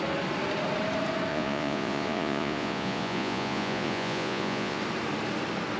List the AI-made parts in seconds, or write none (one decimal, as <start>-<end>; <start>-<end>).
1.3-4.8